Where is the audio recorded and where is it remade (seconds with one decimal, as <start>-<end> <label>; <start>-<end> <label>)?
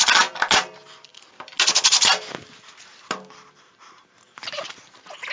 0.0-5.3 recorded